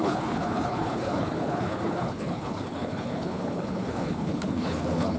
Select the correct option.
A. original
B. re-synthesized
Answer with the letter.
B